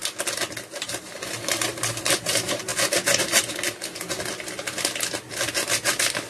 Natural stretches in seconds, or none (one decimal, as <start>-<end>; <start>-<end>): 0.0-0.7; 2.7-6.3